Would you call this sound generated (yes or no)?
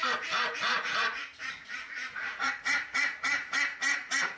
yes